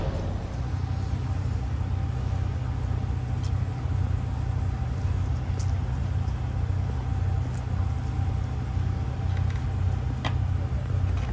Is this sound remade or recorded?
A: recorded